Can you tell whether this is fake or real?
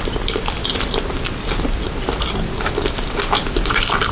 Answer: real